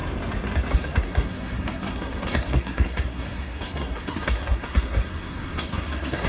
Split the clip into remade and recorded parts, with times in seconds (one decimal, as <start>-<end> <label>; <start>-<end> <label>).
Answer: 0.0-0.7 recorded; 0.7-6.3 remade